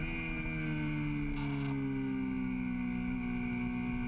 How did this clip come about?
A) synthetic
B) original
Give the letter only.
B